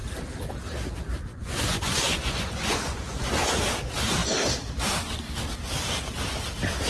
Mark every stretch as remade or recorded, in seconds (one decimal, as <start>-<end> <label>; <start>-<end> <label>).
0.0-1.3 recorded; 1.3-3.3 remade; 3.3-6.9 recorded